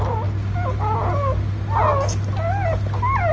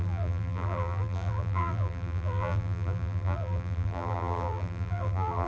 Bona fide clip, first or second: first